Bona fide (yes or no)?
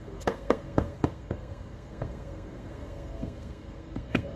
no